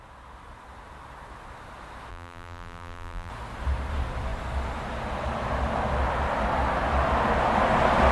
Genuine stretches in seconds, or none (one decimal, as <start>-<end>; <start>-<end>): 0.0-2.1; 3.3-8.1